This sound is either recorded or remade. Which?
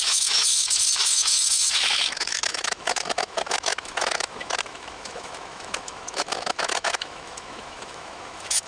remade